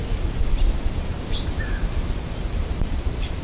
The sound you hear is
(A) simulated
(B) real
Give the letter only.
A